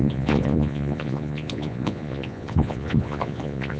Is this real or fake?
fake